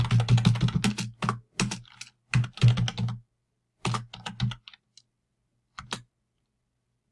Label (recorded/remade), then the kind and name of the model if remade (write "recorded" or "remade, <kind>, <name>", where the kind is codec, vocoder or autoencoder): recorded